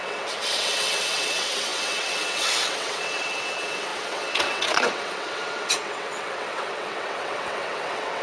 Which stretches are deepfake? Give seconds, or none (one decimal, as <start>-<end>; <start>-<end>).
0.0-8.2